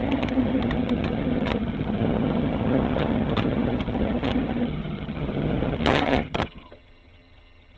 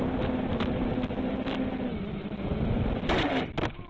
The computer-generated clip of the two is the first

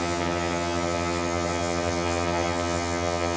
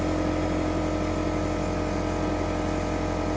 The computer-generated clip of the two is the first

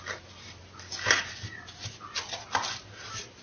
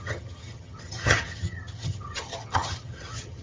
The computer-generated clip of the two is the second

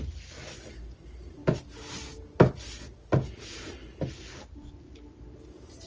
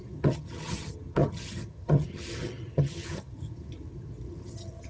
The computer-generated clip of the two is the second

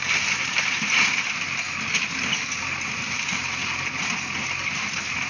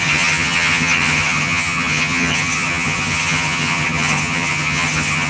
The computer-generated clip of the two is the second